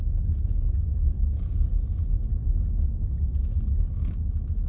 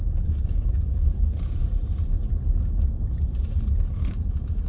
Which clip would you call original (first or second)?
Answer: first